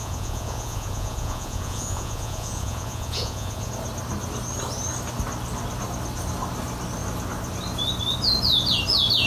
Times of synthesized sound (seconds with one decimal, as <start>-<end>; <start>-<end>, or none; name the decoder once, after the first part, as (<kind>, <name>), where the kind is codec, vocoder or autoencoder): 0.0-3.7 (vocoder, Vocos)